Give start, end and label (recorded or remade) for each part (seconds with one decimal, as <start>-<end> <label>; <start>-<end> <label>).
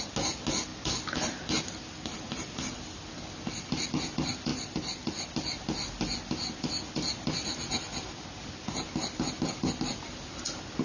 0.0-10.8 recorded